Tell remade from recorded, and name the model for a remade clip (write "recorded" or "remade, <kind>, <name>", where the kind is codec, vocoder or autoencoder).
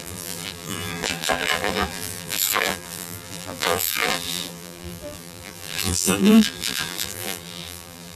remade, vocoder, BigVGAN v2